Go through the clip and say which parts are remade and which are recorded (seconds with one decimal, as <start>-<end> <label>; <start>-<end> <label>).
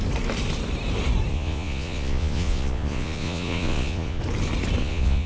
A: 0.0-1.3 recorded; 1.3-4.2 remade; 4.2-4.8 recorded; 4.8-5.3 remade